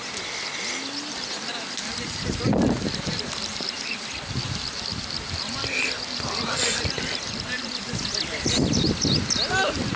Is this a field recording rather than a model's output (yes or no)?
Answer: yes